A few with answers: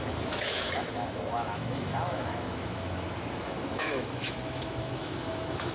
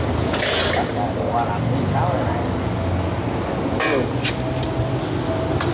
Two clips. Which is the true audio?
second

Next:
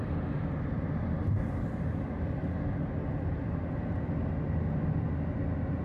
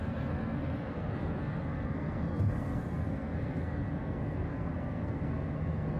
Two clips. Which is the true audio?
first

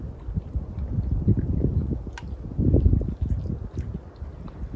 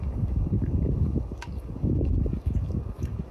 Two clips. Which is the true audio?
first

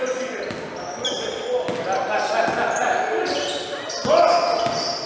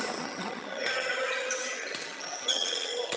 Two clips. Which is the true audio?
first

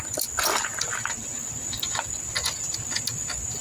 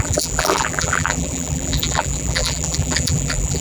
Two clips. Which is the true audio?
first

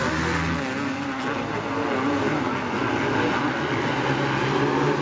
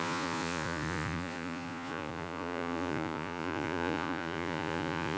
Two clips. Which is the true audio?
first